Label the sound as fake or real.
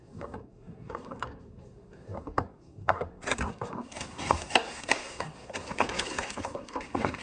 fake